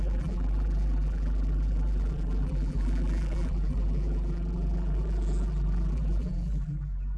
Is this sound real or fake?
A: fake